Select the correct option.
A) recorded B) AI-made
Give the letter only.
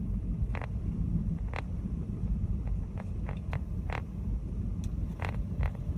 A